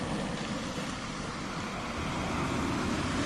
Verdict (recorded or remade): recorded